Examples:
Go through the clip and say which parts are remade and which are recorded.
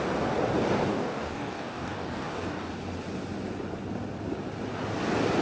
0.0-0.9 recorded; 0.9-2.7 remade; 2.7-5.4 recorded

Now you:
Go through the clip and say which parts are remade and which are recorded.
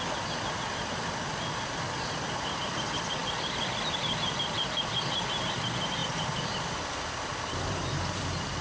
0.0-8.6 remade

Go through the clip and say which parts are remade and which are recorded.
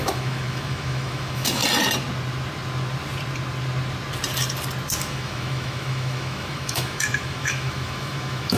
0.0-1.6 remade; 1.6-5.0 recorded; 5.0-8.6 remade